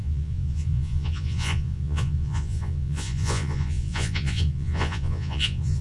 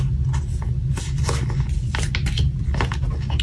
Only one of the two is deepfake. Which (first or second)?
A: first